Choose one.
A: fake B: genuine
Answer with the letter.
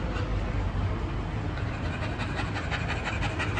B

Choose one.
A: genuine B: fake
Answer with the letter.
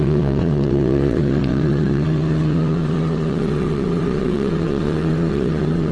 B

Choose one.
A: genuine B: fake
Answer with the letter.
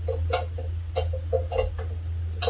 A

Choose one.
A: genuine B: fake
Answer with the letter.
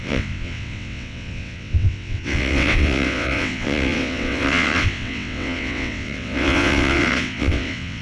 B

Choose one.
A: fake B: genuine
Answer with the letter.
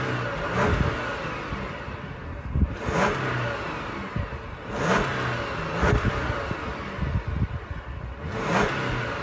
B